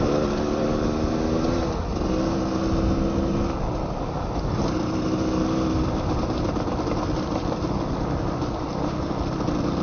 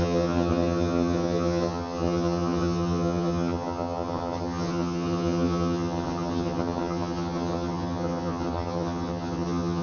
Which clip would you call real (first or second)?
first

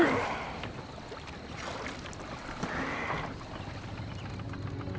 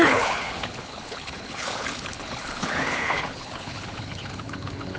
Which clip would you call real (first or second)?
first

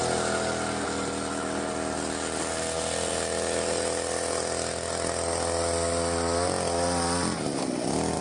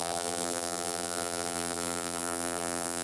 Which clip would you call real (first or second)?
first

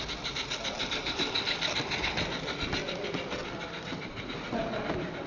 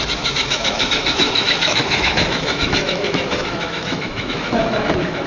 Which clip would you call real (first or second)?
first